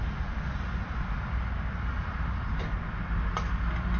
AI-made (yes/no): no